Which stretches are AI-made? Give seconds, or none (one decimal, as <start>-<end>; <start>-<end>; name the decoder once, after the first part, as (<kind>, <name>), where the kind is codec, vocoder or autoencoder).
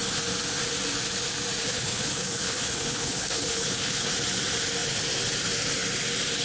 1.6-4.1 (codec, HILCodec)